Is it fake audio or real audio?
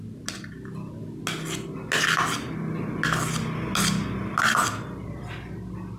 real